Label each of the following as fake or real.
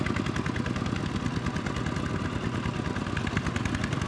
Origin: real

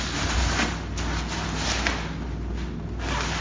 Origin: real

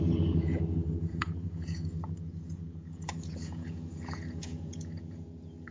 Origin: fake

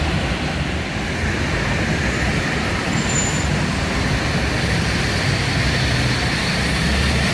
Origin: real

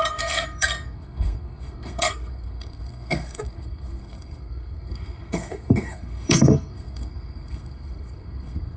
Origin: fake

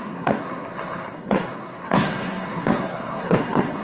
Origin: fake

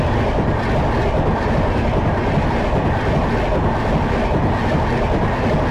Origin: real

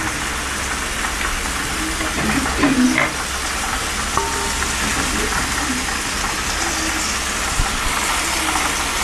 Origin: real